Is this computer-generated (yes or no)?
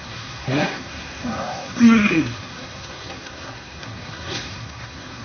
yes